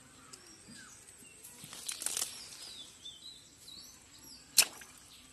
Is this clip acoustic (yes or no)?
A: yes